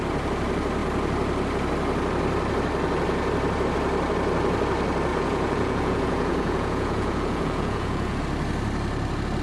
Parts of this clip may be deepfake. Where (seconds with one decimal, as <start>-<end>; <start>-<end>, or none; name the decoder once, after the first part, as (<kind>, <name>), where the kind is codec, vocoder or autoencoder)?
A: 5.1-8.2 (vocoder, Vocos)